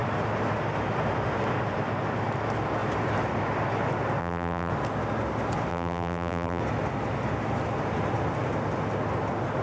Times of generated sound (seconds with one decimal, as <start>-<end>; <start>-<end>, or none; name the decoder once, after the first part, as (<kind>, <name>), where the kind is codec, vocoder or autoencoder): 4.2-4.7 (vocoder, BigVGAN v2); 5.7-6.6